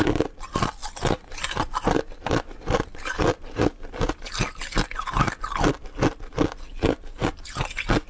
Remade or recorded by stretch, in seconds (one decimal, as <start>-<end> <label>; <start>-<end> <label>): 0.0-8.1 recorded